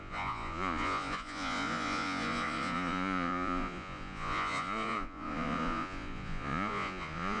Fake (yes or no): yes